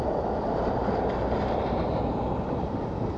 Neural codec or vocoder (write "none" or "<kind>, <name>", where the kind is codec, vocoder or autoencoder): vocoder, BigVGAN v2